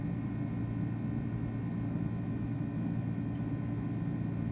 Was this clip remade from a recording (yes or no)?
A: no